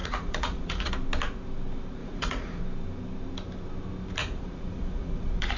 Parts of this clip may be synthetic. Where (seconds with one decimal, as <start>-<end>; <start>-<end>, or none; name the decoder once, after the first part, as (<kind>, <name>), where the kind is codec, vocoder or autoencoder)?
0.0-0.9 (vocoder, Vocos); 2.0-2.6; 4.2-5.6